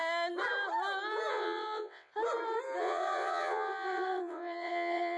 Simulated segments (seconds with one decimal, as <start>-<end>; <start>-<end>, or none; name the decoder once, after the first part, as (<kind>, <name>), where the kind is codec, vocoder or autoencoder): 1.3-2.1 (vocoder, WaveNeXt); 2.8-5.2